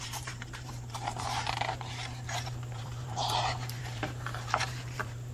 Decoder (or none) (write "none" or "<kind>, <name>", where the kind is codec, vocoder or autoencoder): vocoder, BigVGAN v2